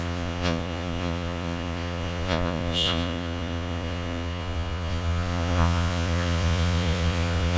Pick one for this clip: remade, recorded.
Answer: remade